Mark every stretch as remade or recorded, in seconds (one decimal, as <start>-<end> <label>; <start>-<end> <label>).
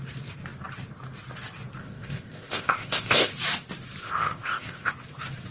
0.0-1.8 recorded; 1.8-3.3 remade; 3.3-4.0 recorded; 4.0-4.9 remade; 4.9-5.5 recorded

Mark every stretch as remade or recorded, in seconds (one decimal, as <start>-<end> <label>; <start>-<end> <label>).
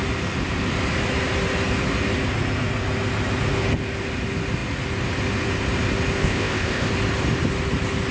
0.0-6.2 recorded; 6.2-6.9 remade; 6.9-8.1 recorded